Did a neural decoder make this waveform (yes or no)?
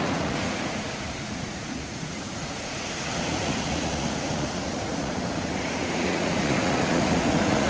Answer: yes